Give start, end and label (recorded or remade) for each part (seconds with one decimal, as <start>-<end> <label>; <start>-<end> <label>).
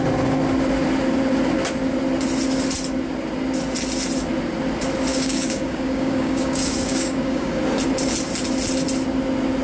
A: 0.0-5.1 recorded; 5.1-7.6 remade; 7.6-9.6 recorded